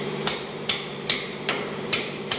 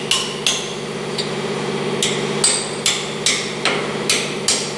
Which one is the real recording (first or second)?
second